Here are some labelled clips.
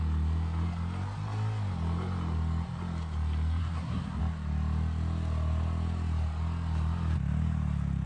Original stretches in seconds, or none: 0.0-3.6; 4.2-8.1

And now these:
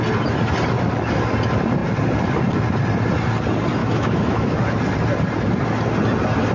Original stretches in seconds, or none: 0.0-3.8; 4.6-6.5

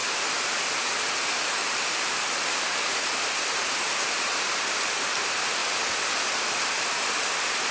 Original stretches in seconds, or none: 0.0-1.1; 1.6-3.5; 5.6-6.9

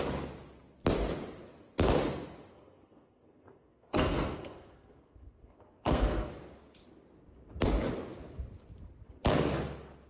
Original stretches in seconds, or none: 0.0-2.5; 6.3-10.1

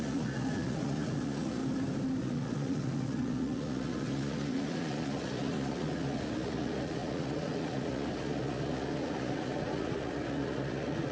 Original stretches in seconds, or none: 1.6-2.2

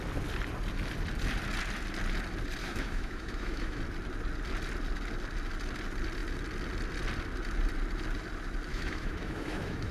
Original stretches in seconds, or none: 0.0-2.6; 3.8-8.7

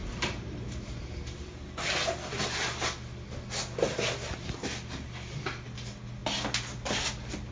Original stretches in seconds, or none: 1.5-7.5

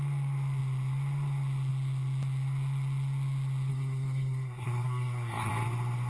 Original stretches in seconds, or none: 0.0-3.7; 5.5-6.1